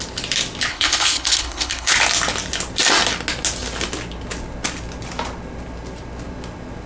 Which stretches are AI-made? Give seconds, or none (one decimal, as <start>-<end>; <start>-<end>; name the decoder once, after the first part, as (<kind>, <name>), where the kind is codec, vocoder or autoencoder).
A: 0.7-1.9 (codec, HILCodec)